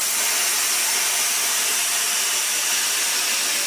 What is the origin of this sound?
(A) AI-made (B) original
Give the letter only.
B